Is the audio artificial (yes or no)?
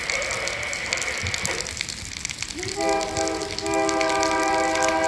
no